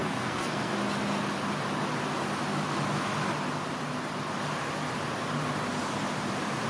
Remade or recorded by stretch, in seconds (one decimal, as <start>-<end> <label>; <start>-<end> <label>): 0.0-0.7 remade; 0.7-6.7 recorded